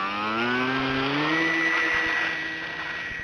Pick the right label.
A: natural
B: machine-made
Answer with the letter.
A